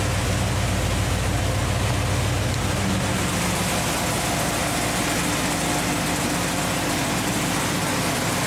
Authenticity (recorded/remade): recorded